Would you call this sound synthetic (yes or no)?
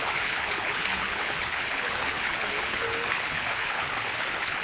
yes